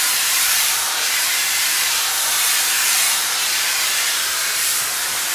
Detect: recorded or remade remade